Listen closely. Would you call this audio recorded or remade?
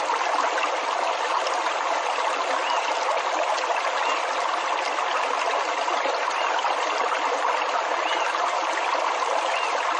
recorded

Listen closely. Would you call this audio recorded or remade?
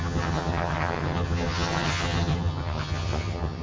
remade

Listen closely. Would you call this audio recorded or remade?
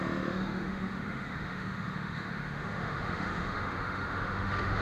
remade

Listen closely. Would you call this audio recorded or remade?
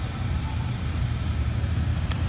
remade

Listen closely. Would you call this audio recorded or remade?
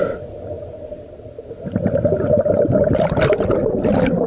recorded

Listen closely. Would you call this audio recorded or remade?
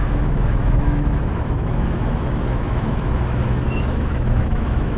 remade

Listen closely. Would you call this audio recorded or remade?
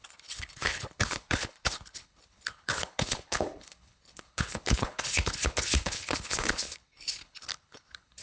remade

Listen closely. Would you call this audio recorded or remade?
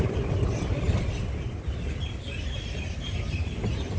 recorded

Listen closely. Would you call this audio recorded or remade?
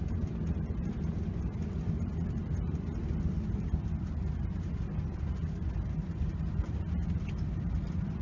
remade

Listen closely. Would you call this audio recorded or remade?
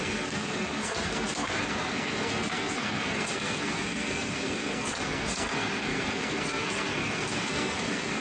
remade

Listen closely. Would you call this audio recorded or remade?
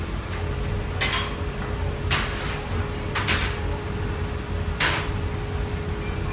recorded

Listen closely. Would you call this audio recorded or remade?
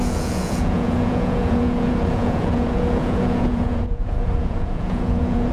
remade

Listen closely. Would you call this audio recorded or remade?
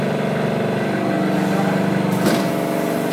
recorded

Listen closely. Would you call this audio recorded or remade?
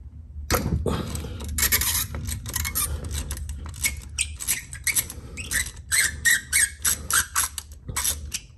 recorded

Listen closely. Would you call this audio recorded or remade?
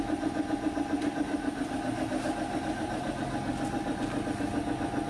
recorded